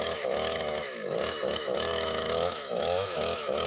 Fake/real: fake